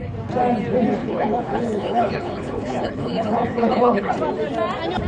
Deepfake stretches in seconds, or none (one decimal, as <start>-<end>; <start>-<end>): 1.0-4.1